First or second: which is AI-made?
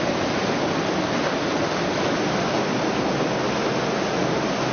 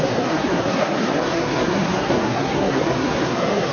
second